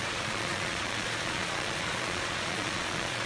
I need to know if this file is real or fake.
fake